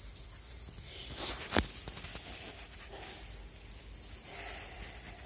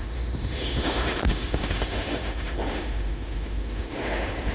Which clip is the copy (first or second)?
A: second